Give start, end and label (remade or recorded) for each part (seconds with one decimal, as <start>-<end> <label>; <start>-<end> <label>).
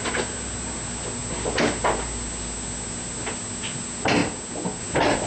0.0-5.3 recorded